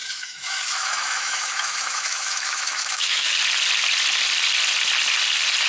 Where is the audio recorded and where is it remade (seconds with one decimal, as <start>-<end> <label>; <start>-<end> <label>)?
0.0-3.4 remade; 3.4-5.7 recorded

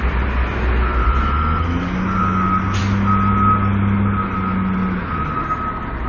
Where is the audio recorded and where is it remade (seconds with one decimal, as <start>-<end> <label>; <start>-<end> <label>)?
0.0-6.1 recorded

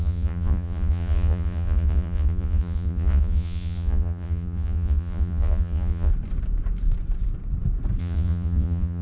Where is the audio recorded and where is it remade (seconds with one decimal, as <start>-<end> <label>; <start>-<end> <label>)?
0.0-6.1 remade; 6.1-8.0 recorded; 8.0-9.0 remade

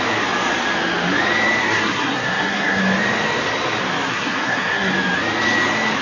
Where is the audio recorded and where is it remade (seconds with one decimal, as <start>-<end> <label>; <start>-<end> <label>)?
0.0-1.6 recorded; 1.6-2.8 remade; 2.8-4.1 recorded; 4.1-4.9 remade; 4.9-6.0 recorded

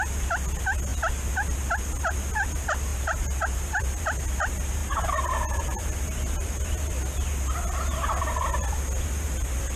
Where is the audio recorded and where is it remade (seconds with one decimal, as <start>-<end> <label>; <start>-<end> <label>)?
0.0-2.9 recorded; 2.9-4.0 remade; 4.0-4.8 recorded; 4.8-7.0 remade; 7.0-9.8 recorded